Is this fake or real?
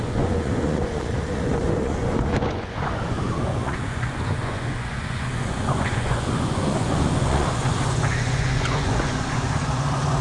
fake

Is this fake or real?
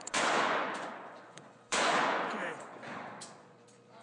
fake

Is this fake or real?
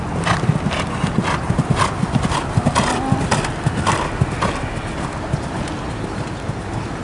real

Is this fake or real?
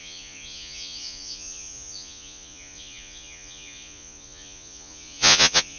fake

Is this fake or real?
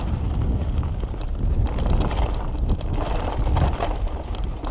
real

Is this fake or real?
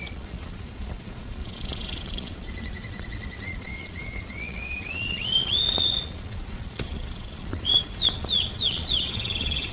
fake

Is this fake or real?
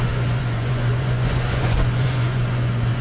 fake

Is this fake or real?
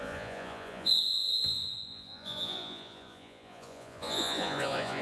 fake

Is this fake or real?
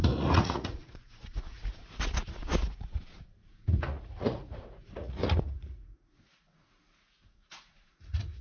fake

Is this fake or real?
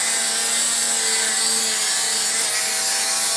real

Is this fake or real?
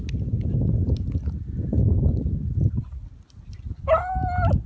real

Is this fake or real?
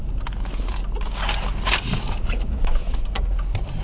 real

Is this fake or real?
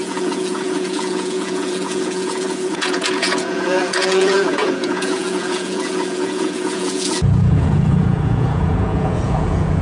fake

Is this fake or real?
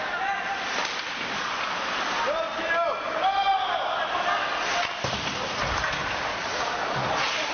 real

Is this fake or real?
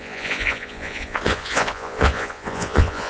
fake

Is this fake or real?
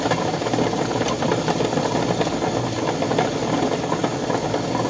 real